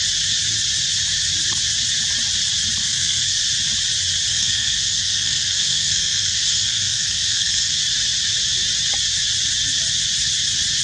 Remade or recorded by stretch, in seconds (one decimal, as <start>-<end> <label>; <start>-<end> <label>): 0.0-2.8 recorded; 2.8-3.4 remade; 3.4-4.3 recorded; 4.3-7.7 remade; 7.7-10.8 recorded